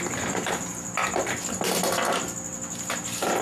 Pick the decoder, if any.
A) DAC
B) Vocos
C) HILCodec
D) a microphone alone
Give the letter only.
D